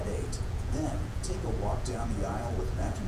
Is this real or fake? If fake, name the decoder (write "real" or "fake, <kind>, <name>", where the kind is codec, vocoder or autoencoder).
fake, vocoder, Vocos